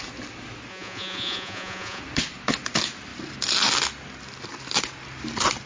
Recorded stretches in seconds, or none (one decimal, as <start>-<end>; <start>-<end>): 0.0-0.7; 2.0-5.7